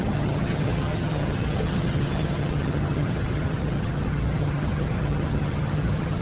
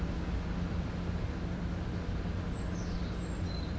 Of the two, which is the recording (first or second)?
second